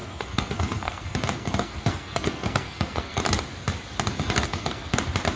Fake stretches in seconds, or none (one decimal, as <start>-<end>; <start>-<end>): 0.0-3.2; 4.1-5.0